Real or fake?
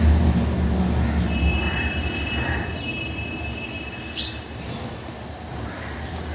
real